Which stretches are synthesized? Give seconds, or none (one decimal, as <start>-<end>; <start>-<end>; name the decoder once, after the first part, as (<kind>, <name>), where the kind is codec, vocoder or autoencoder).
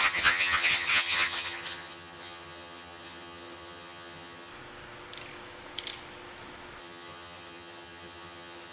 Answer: 0.0-4.5 (vocoder, HiFi-GAN); 6.8-8.7